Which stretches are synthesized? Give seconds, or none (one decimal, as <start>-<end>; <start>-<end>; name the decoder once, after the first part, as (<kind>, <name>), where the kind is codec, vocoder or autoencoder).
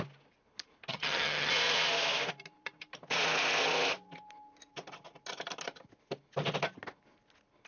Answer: 0.9-1.5 (vocoder, HiFi-GAN)